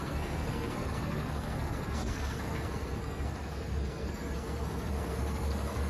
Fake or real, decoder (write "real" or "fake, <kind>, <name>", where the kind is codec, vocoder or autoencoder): fake, codec, SNAC